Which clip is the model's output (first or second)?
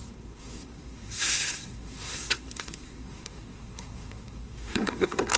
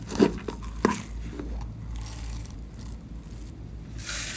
first